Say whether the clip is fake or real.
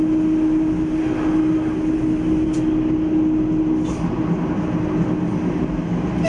real